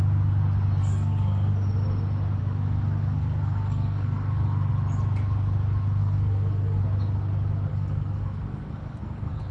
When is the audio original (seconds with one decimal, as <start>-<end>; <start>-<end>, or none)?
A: 0.0-0.8; 1.5-2.4; 4.7-6.0; 6.8-7.7